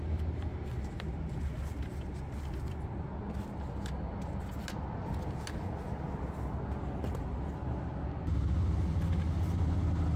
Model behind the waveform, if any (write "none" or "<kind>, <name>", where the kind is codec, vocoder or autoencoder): none